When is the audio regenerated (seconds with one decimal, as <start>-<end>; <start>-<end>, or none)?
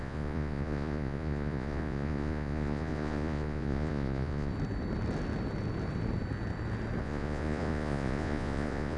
0.0-4.5; 7.0-9.0